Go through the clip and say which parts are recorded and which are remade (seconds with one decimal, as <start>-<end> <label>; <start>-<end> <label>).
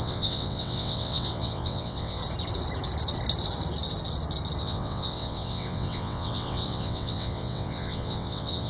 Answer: 0.0-2.2 remade; 2.2-4.6 recorded; 4.6-8.7 remade